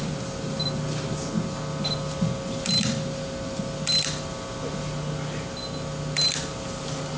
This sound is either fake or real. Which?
real